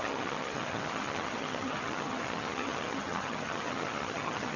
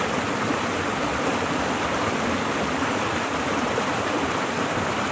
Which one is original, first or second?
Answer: second